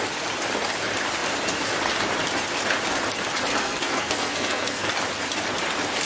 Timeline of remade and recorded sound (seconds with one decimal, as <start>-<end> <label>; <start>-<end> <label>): 0.0-3.5 recorded; 3.5-4.9 remade; 4.9-6.1 recorded